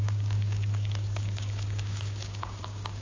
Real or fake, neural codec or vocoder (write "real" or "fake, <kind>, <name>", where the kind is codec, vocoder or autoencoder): fake, codec, DAC